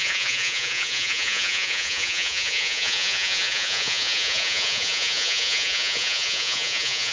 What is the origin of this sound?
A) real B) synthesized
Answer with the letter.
B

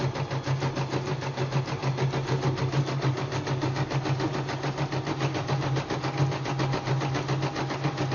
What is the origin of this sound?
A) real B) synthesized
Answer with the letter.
A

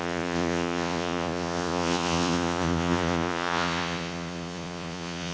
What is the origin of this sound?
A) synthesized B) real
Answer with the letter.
A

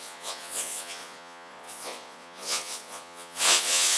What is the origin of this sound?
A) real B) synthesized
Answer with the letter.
B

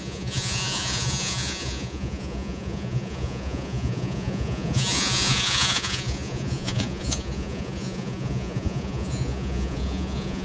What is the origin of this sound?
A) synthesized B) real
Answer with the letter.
A